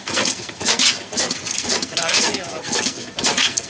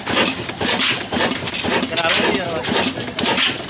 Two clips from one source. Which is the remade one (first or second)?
first